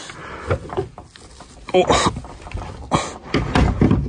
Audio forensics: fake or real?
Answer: real